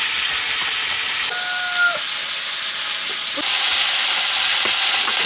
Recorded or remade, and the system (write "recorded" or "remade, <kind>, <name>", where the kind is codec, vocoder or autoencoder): recorded